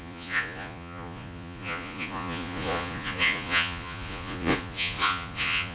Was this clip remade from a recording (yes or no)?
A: yes